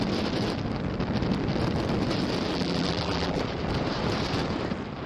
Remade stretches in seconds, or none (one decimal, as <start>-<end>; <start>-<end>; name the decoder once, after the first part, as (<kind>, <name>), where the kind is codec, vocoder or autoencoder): 2.5-3.4 (vocoder, BigVGAN v2)